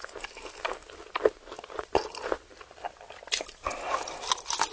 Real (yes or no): yes